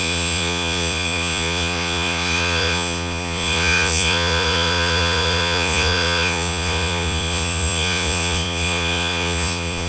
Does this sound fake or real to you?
fake